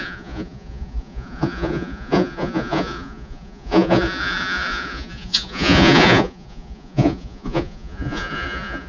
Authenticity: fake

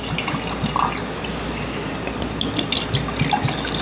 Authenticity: real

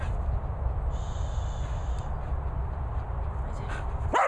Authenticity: real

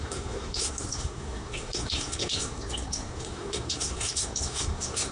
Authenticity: fake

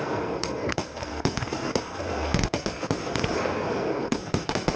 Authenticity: fake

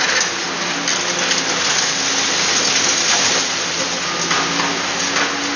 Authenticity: real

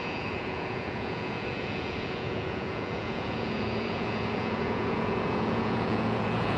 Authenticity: fake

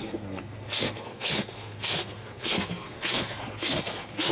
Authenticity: fake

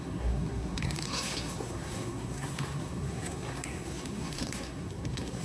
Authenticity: fake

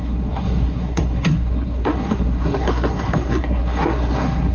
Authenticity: fake